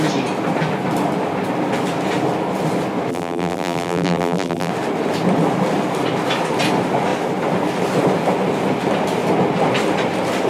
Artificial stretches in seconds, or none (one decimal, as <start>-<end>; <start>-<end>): 3.1-4.7